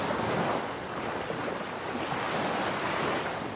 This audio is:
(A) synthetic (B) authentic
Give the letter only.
B